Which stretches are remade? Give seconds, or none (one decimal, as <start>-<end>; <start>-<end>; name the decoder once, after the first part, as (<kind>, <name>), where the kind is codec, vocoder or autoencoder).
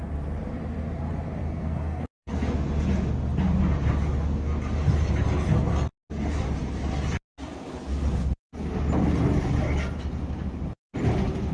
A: 1.4-2.3 (codec, SNAC)